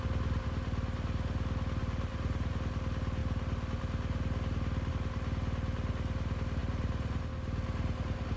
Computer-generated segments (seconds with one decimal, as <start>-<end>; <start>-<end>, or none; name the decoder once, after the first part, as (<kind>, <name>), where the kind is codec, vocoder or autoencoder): 1.8-2.5 (vocoder, BigVGAN v2); 6.6-7.2